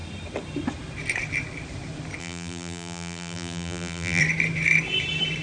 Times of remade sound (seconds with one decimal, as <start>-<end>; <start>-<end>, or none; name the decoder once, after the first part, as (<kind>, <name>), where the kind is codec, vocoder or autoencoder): 2.2-4.2 (vocoder, BigVGAN v2)